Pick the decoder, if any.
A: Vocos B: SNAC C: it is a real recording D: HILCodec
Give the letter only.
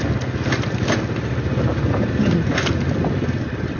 C